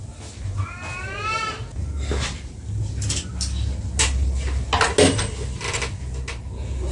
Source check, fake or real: real